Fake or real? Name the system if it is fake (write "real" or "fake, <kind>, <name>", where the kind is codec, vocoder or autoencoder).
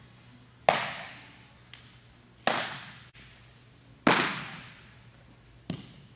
real